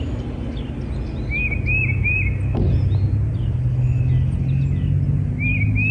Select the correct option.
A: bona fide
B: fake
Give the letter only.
A